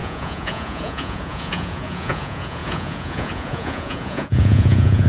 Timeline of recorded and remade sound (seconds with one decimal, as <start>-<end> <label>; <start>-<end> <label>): 0.0-5.1 remade